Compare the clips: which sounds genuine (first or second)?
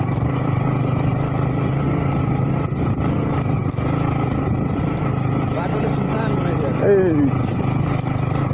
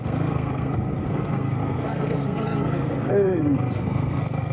first